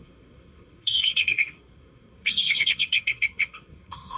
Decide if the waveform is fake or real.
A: fake